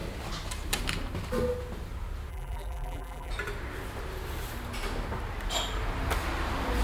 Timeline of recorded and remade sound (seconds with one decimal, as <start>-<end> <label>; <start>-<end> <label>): 0.0-2.3 recorded; 2.3-3.3 remade; 3.3-6.8 recorded

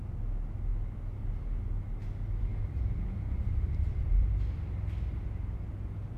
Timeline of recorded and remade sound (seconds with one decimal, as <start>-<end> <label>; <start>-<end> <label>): 0.0-2.5 recorded; 2.5-4.3 remade; 4.3-6.2 recorded